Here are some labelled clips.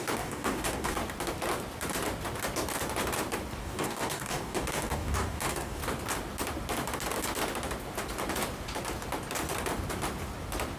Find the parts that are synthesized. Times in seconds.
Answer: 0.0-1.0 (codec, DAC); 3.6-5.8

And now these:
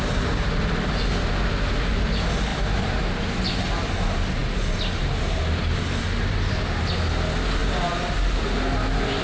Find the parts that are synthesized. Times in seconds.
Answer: none

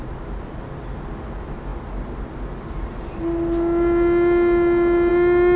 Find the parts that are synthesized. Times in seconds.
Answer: none

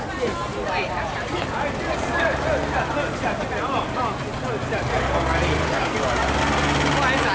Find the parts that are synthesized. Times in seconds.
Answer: 0.5-2.5 (vocoder, BigVGAN v2)

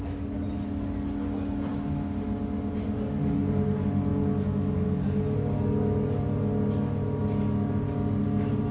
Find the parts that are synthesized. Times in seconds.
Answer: none

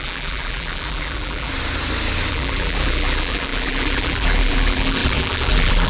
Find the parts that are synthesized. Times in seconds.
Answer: 0.0-1.5 (vocoder, BigVGAN v2); 2.3-5.9

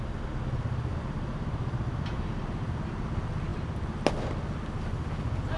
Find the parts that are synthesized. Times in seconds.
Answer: 1.3-2.4 (vocoder, BigVGAN v2)